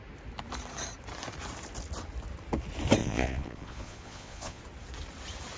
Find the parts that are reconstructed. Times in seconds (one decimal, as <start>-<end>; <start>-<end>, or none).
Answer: 3.0-4.6